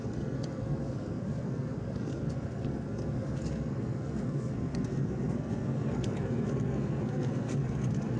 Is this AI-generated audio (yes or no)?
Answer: yes